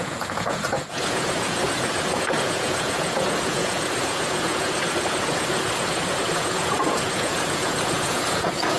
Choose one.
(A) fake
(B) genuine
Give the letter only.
A